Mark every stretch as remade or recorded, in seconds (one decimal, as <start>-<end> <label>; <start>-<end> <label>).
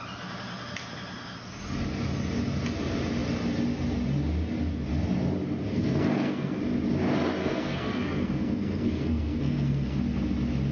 0.0-5.7 recorded; 5.7-6.6 remade; 6.6-7.4 recorded; 7.4-10.0 remade; 10.0-10.7 recorded